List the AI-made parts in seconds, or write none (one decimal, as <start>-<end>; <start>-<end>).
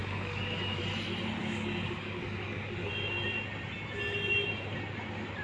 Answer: 0.0-0.8; 1.4-2.9